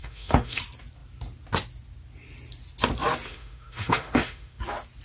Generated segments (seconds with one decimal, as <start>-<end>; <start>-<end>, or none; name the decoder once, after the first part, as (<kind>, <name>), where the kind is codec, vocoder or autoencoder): 0.0-0.6 (autoencoder, DAC-VAE); 3.3-4.6